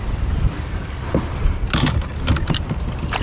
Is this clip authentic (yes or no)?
yes